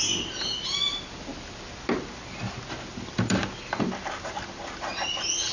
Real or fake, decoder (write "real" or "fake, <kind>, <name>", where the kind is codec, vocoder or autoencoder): real